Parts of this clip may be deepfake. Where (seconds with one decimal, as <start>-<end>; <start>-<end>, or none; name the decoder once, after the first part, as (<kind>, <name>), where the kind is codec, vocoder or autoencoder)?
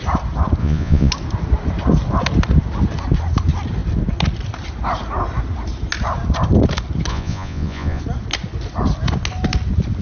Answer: 0.6-1.1 (vocoder, Vocos); 7.1-8.0